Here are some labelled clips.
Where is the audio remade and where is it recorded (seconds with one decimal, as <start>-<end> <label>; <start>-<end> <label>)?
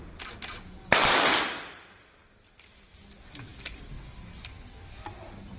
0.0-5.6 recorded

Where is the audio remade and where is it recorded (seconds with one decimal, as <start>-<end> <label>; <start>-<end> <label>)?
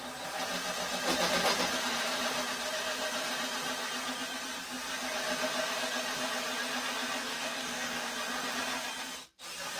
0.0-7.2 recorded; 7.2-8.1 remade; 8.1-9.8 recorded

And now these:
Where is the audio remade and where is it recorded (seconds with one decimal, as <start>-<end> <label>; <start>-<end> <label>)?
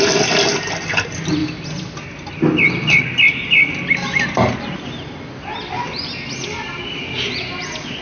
0.0-8.0 recorded